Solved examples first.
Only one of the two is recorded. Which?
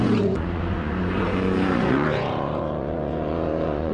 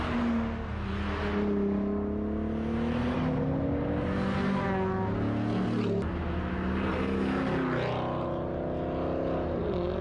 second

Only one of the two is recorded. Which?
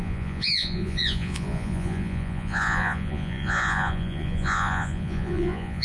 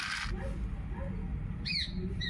second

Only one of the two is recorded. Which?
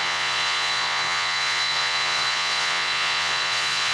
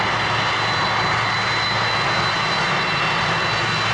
second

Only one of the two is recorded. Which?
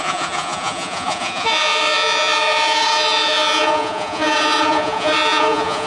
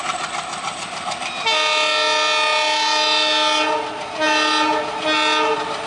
second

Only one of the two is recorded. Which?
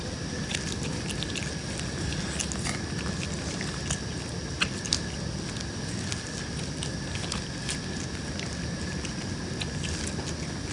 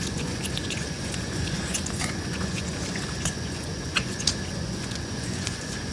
first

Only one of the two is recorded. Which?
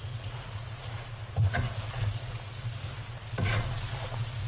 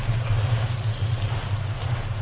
second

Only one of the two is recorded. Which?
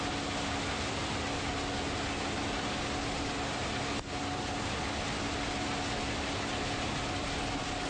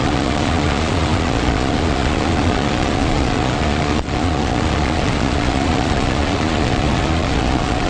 first